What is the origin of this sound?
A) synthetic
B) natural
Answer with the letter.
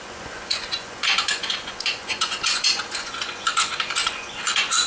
A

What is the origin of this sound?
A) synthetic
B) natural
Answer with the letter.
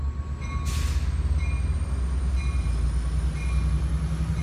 B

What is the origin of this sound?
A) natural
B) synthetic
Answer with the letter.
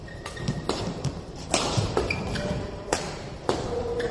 B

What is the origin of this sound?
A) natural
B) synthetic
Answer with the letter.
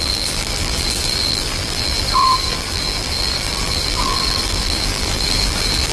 B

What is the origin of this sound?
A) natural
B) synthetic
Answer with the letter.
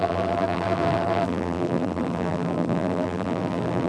B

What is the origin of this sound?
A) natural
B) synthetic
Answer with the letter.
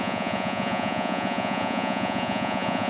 B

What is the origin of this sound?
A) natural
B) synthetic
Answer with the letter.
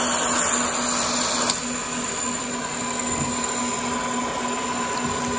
A